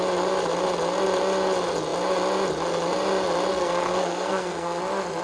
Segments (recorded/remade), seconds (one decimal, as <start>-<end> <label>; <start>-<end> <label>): 0.0-3.5 recorded; 3.5-4.8 remade; 4.8-5.2 recorded